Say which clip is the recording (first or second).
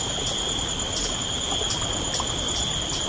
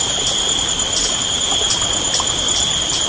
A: first